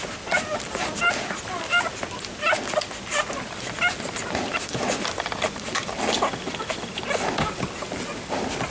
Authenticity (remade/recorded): recorded